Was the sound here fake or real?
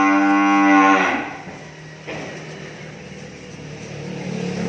real